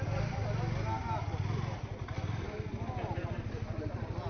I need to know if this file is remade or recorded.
recorded